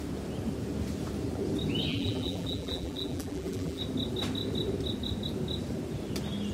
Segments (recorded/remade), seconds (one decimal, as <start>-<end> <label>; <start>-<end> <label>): 0.0-1.9 recorded; 1.9-3.8 remade; 3.8-6.5 recorded

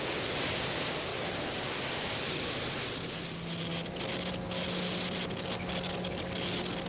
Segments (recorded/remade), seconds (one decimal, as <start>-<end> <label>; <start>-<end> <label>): 0.0-6.9 recorded

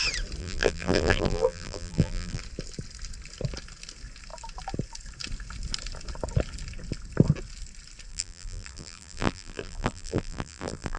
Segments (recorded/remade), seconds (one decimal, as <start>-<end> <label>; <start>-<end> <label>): 0.0-0.4 recorded; 0.4-2.4 remade; 2.4-8.1 recorded; 8.1-11.0 remade

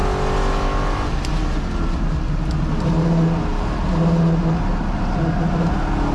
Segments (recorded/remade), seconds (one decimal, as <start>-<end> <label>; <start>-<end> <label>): 0.0-6.1 recorded

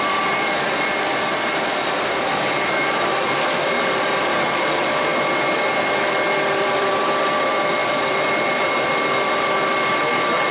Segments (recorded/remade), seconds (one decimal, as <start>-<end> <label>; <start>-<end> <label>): 0.0-5.1 remade; 5.1-5.8 recorded; 5.8-10.5 remade

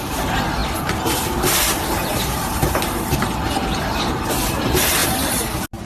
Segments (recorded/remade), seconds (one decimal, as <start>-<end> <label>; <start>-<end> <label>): 0.0-5.0 remade; 5.0-5.9 recorded

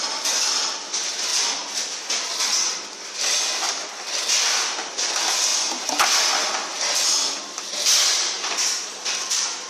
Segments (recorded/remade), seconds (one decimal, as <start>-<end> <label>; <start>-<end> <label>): 0.0-9.7 recorded